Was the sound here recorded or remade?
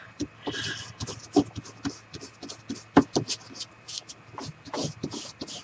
recorded